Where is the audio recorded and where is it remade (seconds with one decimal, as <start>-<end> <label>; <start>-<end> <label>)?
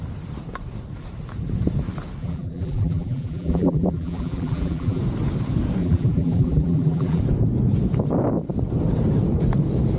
0.0-2.2 recorded; 2.2-5.0 remade; 5.0-5.8 recorded; 5.8-7.2 remade; 7.2-10.0 recorded